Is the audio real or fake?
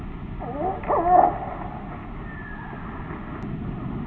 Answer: real